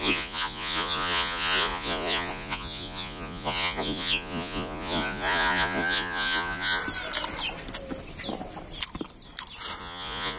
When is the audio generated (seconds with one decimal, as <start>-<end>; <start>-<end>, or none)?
0.0-6.8; 9.8-10.4